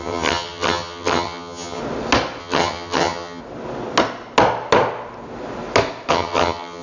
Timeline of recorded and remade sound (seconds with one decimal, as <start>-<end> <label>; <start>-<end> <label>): 0.0-1.8 remade; 1.8-2.4 recorded; 2.4-3.4 remade; 3.4-6.1 recorded; 6.1-6.8 remade